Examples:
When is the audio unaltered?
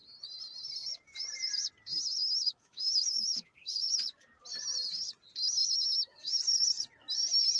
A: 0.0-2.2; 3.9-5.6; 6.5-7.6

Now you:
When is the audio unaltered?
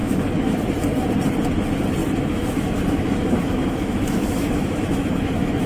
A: 0.6-2.0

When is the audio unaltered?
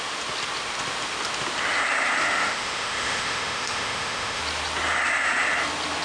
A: 0.0-2.2; 4.4-6.0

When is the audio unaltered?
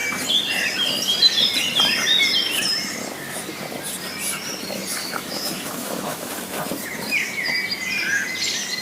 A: 0.0-5.0; 6.3-8.8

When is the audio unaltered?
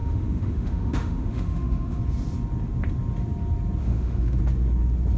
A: 2.0-3.8; 4.4-5.2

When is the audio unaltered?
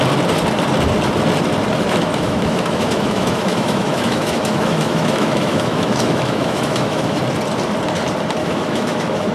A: 0.0-2.1; 7.2-8.4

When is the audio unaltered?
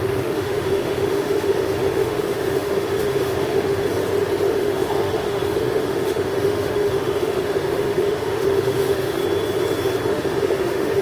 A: 3.9-4.5; 9.2-10.1